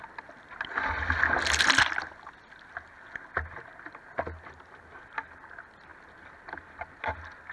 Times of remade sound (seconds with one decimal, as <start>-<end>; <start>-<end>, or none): none